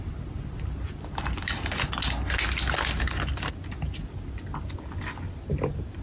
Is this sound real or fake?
real